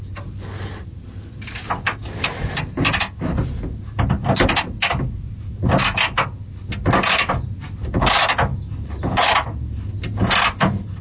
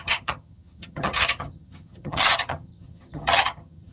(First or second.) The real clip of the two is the first